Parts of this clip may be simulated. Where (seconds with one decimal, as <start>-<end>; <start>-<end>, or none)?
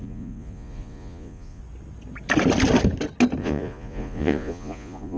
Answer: 0.0-1.6; 3.4-5.2